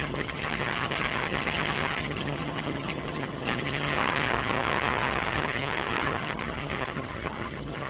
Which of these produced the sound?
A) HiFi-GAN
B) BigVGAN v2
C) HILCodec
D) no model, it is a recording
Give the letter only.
A